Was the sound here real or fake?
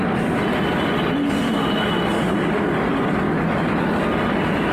real